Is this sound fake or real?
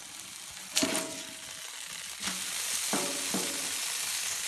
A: real